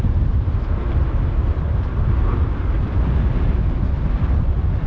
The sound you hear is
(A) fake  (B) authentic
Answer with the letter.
B